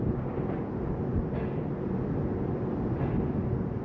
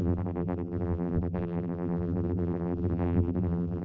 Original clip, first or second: first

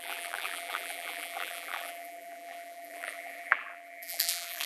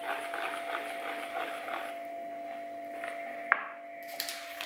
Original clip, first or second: second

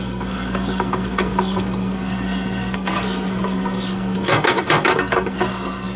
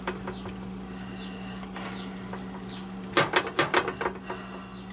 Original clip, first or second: second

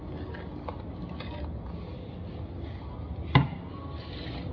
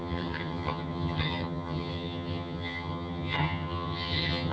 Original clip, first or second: first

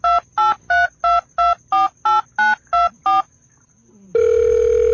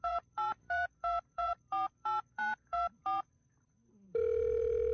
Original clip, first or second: first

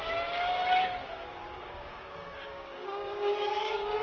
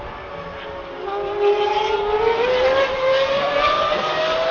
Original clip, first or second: second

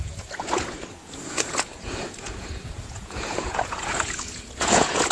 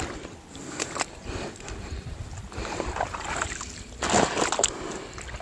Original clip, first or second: second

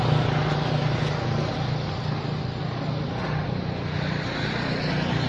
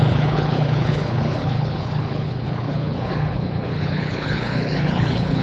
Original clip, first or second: first